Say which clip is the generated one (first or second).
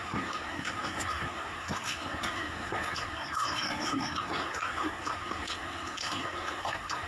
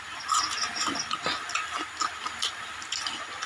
first